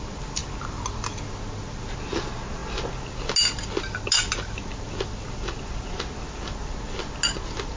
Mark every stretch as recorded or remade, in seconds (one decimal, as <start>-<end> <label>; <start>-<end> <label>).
0.0-7.8 recorded